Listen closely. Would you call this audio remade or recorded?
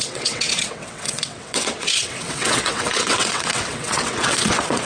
remade